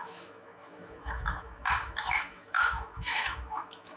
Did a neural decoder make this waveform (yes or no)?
yes